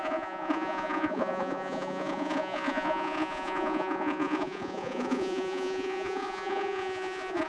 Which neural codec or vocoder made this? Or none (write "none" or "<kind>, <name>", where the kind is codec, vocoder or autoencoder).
vocoder, Vocos